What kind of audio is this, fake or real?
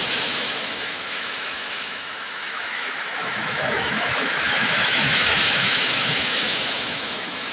fake